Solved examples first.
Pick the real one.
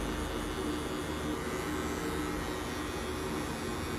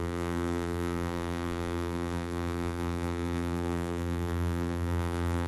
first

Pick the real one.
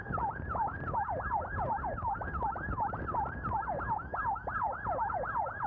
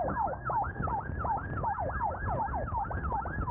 second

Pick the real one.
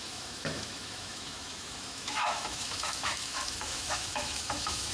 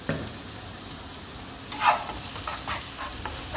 second